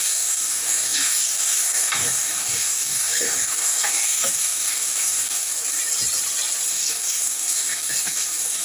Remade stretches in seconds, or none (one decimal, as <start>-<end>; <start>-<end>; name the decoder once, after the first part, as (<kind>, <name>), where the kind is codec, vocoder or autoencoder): 0.0-5.5 (codec, DAC); 6.7-8.6